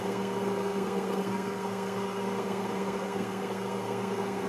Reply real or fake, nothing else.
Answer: fake